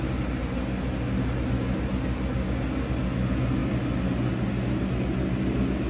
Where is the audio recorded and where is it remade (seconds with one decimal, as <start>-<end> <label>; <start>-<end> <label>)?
0.0-5.9 recorded